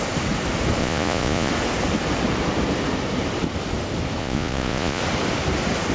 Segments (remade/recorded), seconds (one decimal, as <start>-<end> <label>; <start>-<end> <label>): 0.0-0.8 recorded; 0.8-1.5 remade; 1.5-4.2 recorded; 4.2-5.0 remade; 5.0-5.9 recorded